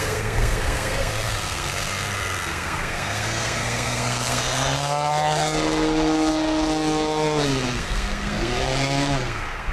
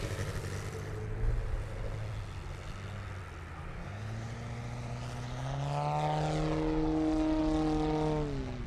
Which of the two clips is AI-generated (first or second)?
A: first